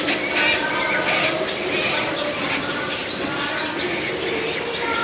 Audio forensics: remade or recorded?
recorded